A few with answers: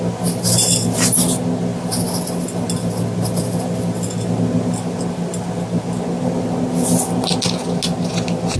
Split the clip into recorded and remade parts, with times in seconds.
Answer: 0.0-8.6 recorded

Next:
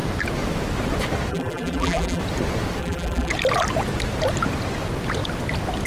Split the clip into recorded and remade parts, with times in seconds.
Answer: 0.0-1.3 recorded; 1.3-2.2 remade; 2.2-2.8 recorded; 2.8-3.3 remade; 3.3-5.9 recorded

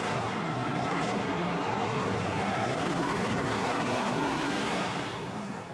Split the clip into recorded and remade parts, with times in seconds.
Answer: 0.0-5.7 remade

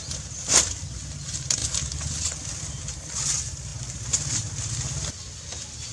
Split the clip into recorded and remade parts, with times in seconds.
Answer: 0.0-5.9 recorded

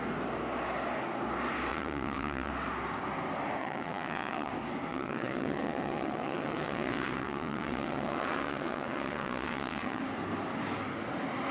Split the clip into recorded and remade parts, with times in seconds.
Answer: 0.0-1.7 recorded; 1.7-2.5 remade; 2.5-3.6 recorded; 3.6-4.5 remade; 4.5-4.9 recorded; 4.9-10.0 remade; 10.0-11.5 recorded

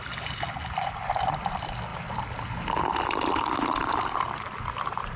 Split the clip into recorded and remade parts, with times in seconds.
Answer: 0.0-5.2 recorded